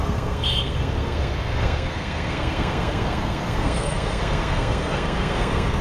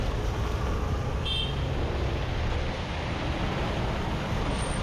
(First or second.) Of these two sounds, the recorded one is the second